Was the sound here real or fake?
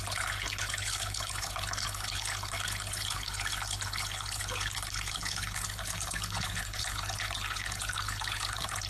fake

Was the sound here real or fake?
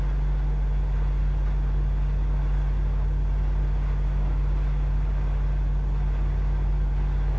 real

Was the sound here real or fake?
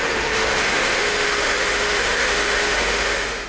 fake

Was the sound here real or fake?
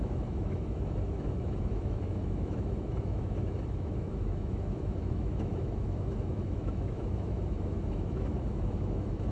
fake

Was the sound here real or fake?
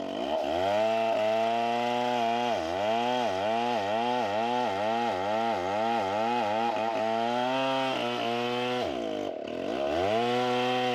real